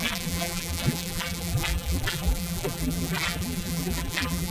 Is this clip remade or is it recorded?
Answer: remade